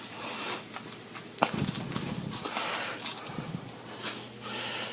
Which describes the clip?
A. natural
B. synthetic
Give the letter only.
A